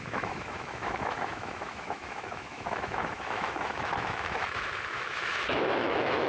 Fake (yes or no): yes